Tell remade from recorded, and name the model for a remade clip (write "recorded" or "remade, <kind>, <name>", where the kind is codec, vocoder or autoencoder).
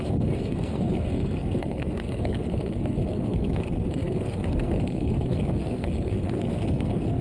remade, codec, SNAC